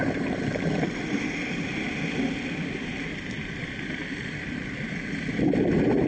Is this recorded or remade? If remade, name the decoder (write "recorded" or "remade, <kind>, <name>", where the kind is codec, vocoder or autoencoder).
remade, vocoder, BigVGAN v2